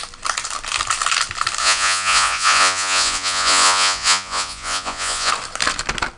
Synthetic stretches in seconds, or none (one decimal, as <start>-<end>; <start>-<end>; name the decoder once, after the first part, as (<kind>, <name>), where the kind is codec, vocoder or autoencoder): 1.6-5.3 (vocoder, Vocos)